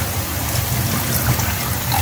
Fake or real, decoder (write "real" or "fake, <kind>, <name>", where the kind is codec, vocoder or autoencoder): real